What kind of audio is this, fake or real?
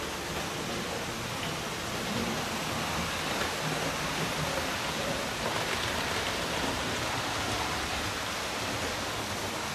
real